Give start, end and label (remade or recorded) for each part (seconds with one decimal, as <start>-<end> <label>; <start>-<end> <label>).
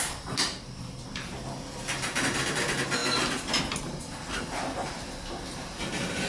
0.0-6.3 recorded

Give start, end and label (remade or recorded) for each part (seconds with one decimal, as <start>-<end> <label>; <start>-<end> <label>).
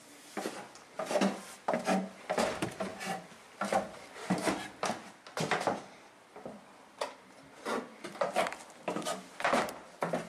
0.0-10.3 recorded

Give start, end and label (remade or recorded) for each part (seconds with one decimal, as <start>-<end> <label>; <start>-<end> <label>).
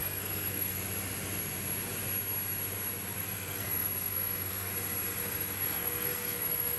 0.0-0.8 remade; 0.8-3.2 recorded; 3.2-4.7 remade; 4.7-5.2 recorded; 5.2-6.8 remade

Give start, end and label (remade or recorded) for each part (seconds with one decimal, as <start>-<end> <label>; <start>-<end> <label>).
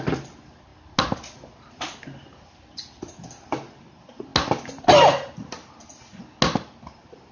0.0-7.3 recorded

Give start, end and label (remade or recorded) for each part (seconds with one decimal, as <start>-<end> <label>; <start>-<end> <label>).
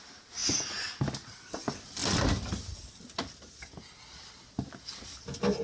0.0-5.6 recorded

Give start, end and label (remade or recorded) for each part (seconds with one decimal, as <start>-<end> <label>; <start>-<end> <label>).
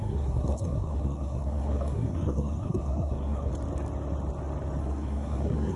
0.0-3.5 remade; 3.5-4.8 recorded; 4.8-5.8 remade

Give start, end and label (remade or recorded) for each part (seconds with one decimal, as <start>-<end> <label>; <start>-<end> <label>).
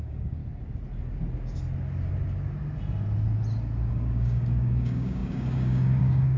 0.0-0.4 remade; 0.4-3.9 recorded; 3.9-6.4 remade